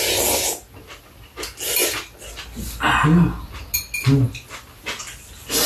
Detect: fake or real real